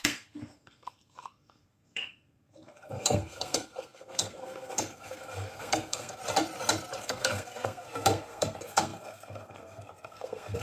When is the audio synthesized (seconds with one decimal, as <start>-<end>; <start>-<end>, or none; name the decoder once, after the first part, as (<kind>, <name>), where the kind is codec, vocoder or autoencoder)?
0.0-6.2 (codec, SNAC); 7.0-10.6